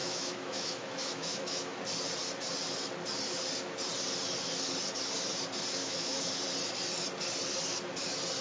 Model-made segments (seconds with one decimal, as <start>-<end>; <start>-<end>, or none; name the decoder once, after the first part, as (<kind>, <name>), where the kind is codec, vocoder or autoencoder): 0.0-1.8 (autoencoder, DAC-VAE); 5.8-6.3